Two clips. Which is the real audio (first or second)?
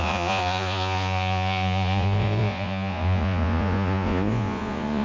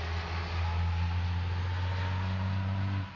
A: second